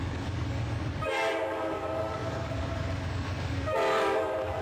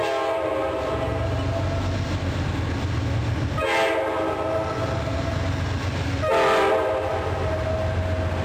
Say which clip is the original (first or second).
second